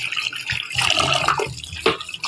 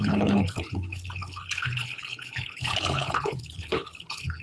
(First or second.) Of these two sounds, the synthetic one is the second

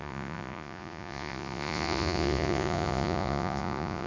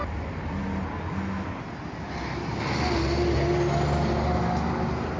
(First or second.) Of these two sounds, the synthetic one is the first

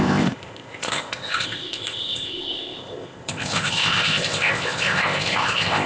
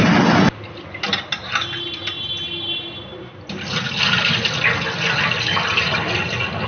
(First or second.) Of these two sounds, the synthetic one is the first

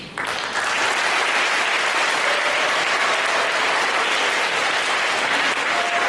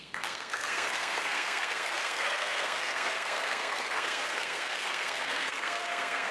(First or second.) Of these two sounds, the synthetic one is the second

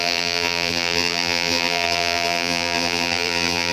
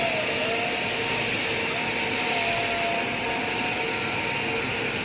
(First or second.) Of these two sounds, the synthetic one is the first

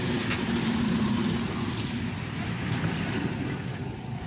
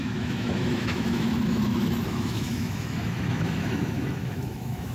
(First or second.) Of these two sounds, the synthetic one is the second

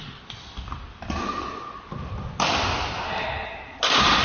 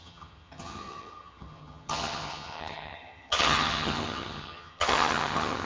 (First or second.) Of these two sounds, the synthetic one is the second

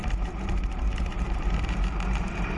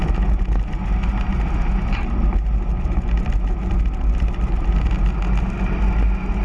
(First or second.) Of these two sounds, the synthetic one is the first